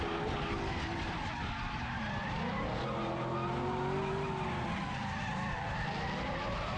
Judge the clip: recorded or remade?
recorded